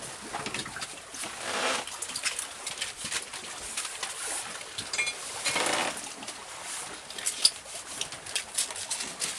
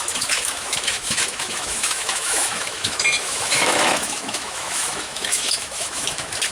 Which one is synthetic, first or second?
second